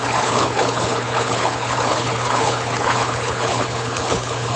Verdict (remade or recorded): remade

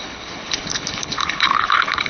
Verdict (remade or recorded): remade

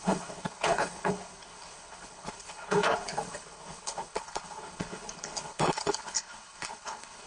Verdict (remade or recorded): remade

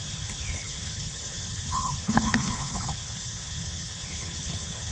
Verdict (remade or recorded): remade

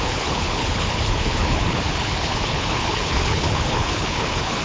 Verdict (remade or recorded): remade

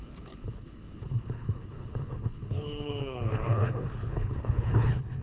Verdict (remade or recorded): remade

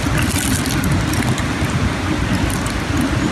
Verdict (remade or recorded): recorded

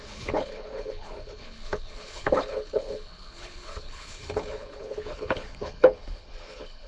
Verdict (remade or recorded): remade